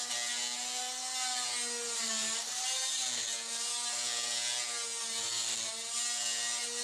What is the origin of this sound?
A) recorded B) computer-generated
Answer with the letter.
A